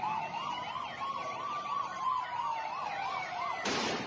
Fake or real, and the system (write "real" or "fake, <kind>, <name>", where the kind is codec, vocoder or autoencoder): real